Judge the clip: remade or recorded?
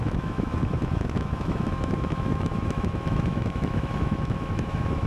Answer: remade